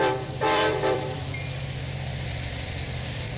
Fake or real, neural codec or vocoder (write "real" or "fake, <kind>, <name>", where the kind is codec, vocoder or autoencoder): fake, vocoder, BigVGAN v2